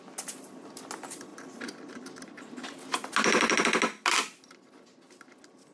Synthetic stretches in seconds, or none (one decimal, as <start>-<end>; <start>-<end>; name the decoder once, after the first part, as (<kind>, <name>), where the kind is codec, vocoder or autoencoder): none